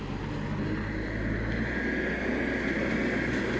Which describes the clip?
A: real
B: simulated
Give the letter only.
A